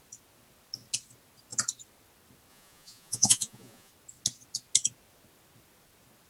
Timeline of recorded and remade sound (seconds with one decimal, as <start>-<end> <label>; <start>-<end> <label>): 0.0-2.5 recorded; 2.5-3.9 remade; 3.9-6.3 recorded